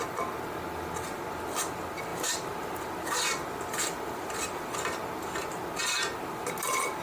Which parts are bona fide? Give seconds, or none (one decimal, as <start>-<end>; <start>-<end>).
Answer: 0.0-7.0